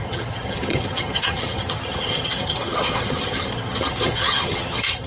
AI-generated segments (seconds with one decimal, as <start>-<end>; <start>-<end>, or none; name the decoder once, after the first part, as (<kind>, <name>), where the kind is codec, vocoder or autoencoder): 0.0-5.1 (vocoder, HiFi-GAN)